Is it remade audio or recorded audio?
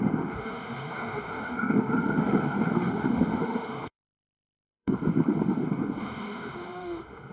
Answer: remade